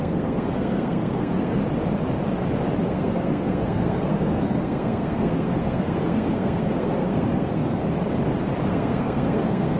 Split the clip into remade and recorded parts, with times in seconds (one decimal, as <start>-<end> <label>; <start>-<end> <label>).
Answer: 0.0-1.6 remade; 1.6-2.8 recorded; 2.8-7.8 remade; 7.8-8.7 recorded; 8.7-9.8 remade